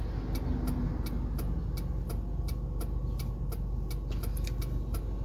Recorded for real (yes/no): yes